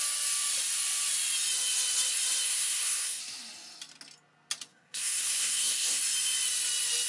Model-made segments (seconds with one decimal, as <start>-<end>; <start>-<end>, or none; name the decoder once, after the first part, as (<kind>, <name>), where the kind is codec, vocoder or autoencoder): 2.5-3.2 (codec, SNAC); 4.7-6.0